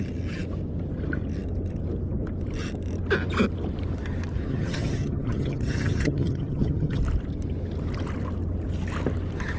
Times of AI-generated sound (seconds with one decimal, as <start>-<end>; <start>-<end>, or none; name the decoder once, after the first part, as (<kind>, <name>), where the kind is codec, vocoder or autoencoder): 4.5-7.0 (vocoder, HiFi-GAN)